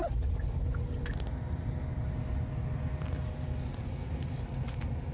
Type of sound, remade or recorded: recorded